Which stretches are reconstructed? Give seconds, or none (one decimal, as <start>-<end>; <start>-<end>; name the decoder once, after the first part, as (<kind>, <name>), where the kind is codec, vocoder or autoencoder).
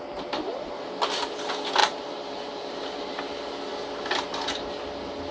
1.8-3.2 (vocoder, BigVGAN v2)